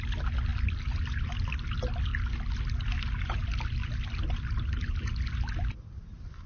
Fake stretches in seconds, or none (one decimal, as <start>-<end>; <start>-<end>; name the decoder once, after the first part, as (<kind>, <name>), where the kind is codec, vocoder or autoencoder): none